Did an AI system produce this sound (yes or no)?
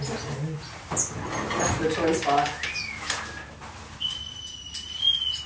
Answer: no